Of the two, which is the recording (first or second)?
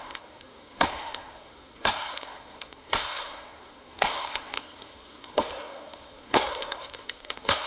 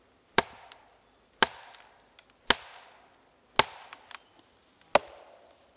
second